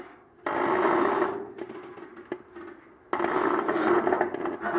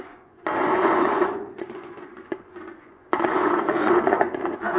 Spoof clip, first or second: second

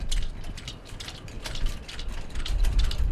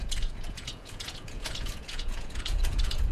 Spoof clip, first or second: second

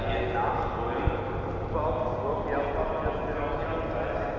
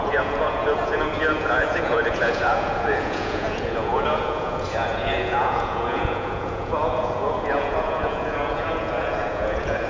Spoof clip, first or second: second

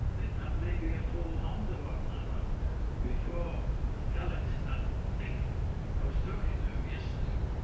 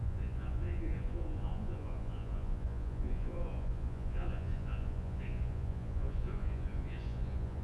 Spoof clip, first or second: second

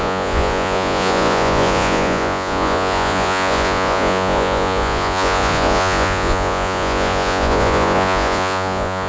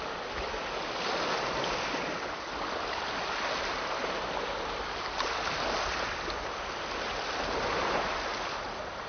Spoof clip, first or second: first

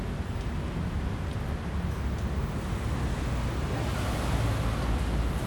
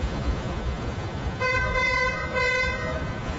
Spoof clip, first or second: second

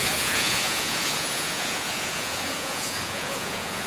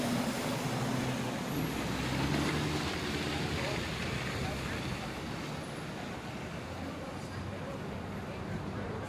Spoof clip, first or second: first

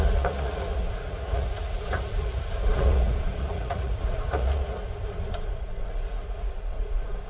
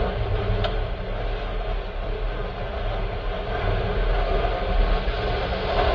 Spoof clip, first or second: first